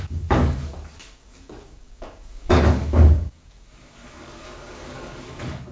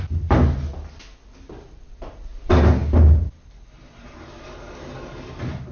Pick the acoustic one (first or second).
second